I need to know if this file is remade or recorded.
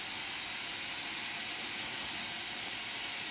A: recorded